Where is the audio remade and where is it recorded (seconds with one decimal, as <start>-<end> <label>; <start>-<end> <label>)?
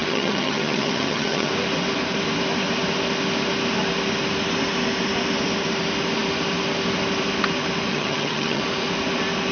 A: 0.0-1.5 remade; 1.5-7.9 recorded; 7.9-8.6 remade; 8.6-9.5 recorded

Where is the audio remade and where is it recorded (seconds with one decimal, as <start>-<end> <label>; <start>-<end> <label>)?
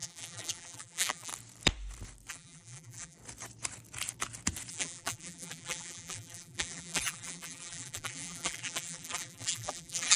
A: 0.0-1.3 remade; 1.3-2.3 recorded; 2.3-3.2 remade; 3.2-4.7 recorded; 4.7-10.2 remade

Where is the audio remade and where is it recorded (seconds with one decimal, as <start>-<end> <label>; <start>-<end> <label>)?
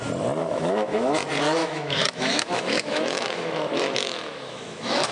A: 0.0-0.4 recorded; 0.4-1.1 remade; 1.1-1.6 recorded; 1.6-5.1 remade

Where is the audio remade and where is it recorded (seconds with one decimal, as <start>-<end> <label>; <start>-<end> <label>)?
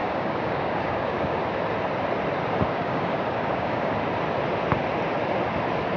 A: 0.0-1.4 remade; 1.4-2.7 recorded; 2.7-3.9 remade; 3.9-6.0 recorded